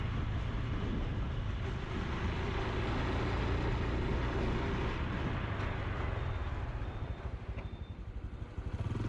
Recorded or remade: recorded